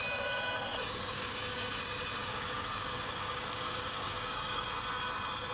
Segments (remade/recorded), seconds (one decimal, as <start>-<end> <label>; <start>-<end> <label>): 0.0-0.8 recorded; 0.8-1.8 remade; 1.8-2.2 recorded; 2.2-4.7 remade; 4.7-5.5 recorded